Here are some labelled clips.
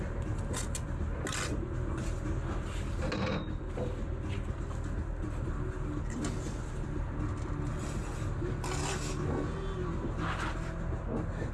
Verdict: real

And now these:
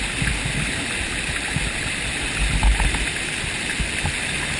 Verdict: real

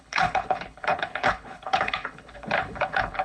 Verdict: fake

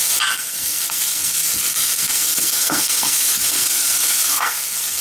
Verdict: fake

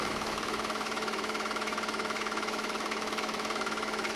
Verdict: fake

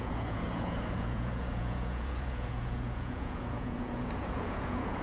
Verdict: fake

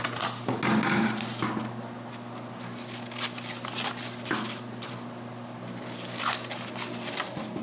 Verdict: real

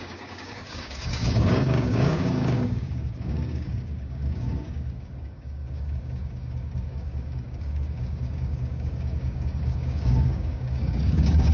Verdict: fake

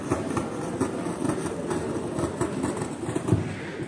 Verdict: real